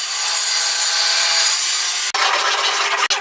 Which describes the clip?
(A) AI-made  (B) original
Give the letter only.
B